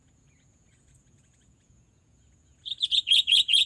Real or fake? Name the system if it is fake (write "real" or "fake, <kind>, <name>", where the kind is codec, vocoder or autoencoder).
fake, vocoder, Vocos